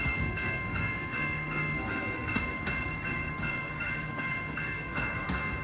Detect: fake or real fake